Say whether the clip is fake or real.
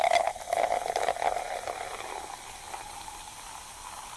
real